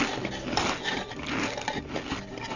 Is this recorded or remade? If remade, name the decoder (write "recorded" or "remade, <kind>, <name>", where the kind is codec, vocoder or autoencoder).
recorded